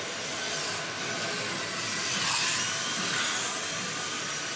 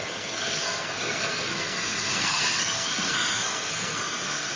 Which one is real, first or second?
first